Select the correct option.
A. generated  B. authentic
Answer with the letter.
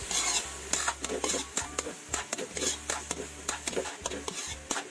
B